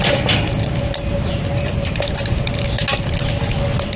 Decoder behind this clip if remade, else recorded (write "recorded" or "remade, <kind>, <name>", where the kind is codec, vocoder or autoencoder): recorded